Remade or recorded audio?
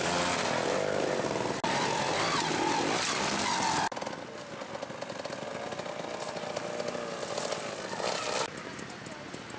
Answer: recorded